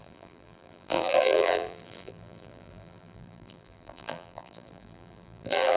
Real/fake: fake